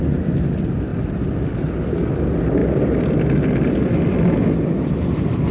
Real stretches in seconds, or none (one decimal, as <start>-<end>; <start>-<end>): 0.0-0.9; 1.7-2.6; 3.1-5.5